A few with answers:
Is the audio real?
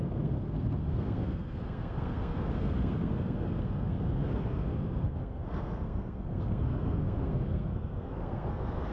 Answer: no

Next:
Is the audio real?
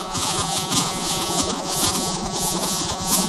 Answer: no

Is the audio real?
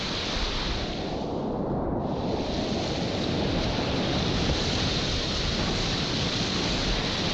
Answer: yes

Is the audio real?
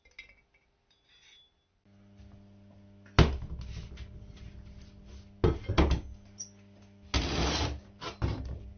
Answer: yes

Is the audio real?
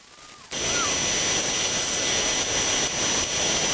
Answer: yes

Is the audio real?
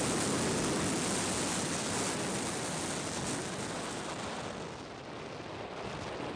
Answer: yes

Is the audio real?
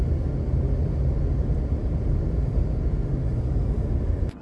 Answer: yes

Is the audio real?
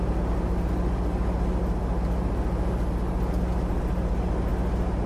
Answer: yes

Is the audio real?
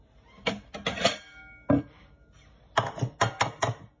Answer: yes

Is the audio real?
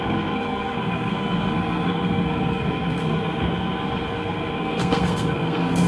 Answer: no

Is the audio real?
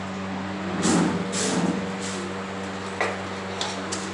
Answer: yes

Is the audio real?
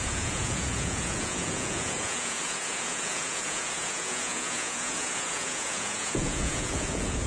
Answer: no